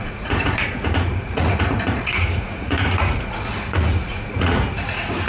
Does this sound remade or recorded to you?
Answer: remade